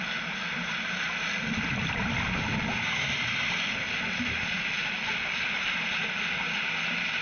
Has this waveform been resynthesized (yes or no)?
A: no